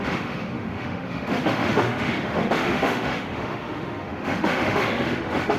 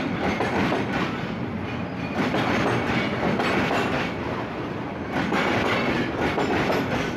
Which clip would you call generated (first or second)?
first